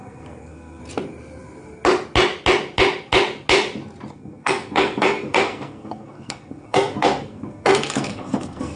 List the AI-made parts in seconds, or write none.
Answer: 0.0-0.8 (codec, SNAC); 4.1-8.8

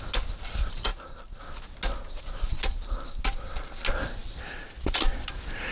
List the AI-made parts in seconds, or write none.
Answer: none

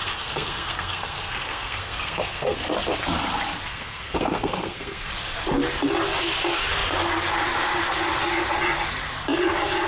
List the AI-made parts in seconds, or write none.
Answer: 0.0-2.6 (codec, SNAC); 3.7-5.1